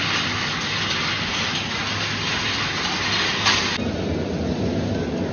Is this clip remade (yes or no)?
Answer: no